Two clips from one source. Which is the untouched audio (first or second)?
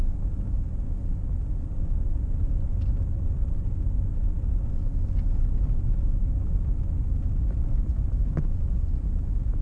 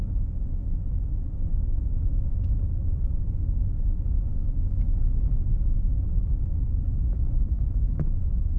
first